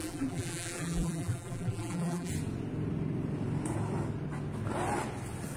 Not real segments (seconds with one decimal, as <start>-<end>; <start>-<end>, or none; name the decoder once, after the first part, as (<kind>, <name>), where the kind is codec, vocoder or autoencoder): 0.0-2.3 (vocoder, BigVGAN v2)